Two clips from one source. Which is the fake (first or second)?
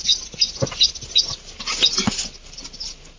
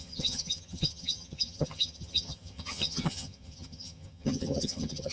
second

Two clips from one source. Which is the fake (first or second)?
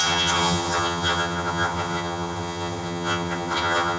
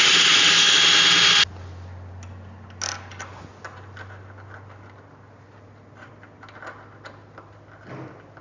first